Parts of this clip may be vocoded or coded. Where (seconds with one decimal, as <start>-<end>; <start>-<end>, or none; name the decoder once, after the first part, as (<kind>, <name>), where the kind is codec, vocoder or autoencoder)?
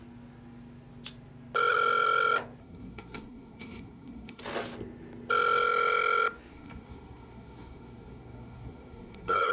2.6-4.4 (codec, SNAC); 6.5-9.5